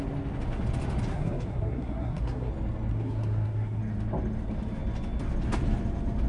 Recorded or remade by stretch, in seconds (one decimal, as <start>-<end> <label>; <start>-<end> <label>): 0.0-1.1 recorded; 1.1-2.5 remade; 2.5-2.9 recorded; 2.9-3.8 remade; 3.8-6.3 recorded